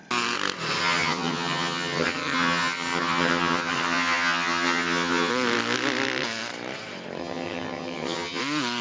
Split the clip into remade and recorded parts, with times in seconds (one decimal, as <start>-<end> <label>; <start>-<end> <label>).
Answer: 0.0-0.8 recorded; 0.8-5.3 remade; 5.3-7.2 recorded; 7.2-8.4 remade; 8.4-8.8 recorded